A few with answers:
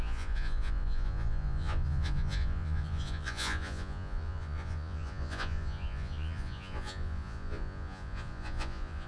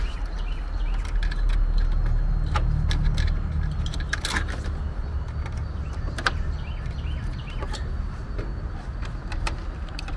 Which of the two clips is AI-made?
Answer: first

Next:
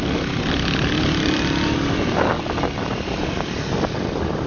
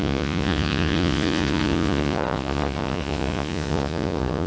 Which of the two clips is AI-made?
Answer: second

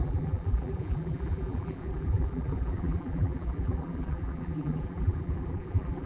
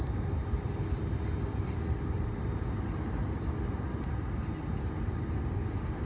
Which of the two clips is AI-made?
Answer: first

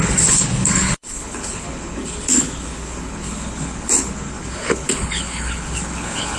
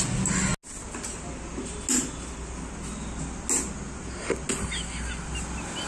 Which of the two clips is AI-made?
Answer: first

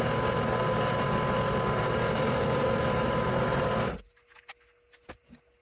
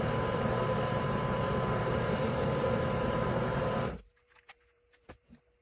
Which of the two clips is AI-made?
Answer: second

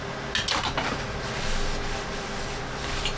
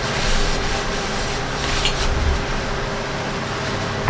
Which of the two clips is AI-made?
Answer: second